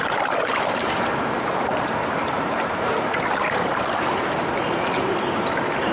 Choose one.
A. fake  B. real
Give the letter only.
A